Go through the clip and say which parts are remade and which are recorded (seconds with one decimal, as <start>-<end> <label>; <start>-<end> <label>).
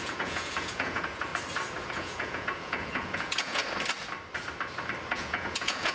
0.0-1.3 remade; 1.3-1.9 recorded; 1.9-3.6 remade; 3.6-5.1 recorded; 5.1-5.9 remade